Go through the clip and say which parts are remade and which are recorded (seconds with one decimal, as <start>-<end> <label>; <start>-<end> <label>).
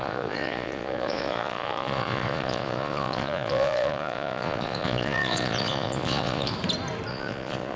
0.0-6.5 remade; 6.5-7.1 recorded; 7.1-7.8 remade